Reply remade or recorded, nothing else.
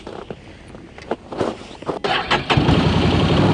recorded